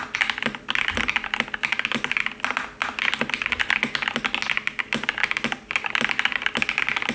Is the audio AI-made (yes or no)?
no